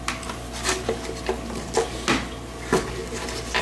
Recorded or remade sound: recorded